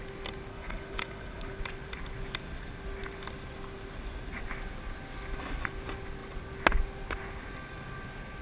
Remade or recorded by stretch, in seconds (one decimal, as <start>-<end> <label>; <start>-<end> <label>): 0.0-0.5 recorded; 0.5-1.6 remade; 1.6-8.4 recorded